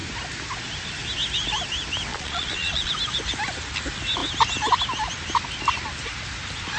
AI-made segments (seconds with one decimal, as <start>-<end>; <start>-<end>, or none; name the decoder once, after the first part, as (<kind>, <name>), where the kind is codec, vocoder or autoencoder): 2.1-2.9 (vocoder, Vocos)